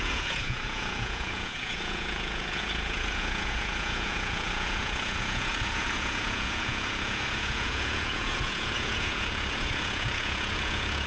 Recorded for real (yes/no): no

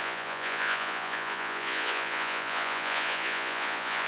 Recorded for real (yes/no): no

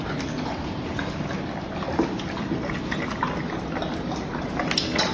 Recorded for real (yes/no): yes